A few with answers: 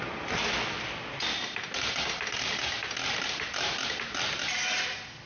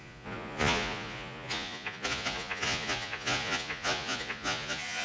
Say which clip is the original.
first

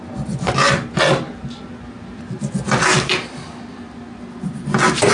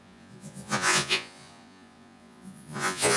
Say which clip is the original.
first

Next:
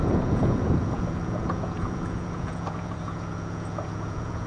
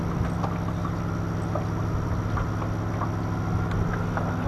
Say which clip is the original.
second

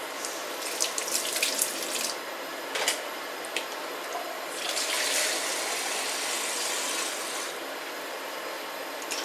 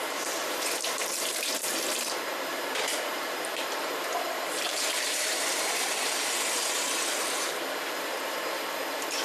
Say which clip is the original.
first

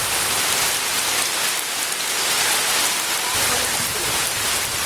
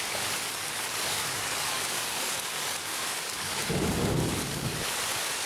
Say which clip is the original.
first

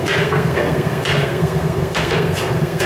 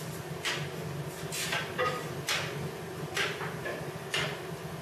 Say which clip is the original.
second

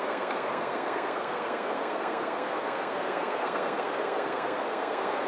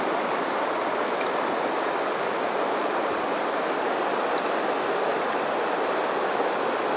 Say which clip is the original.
second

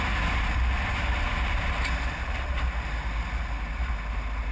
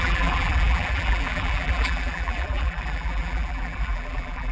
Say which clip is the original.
first